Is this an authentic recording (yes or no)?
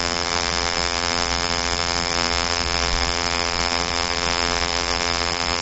no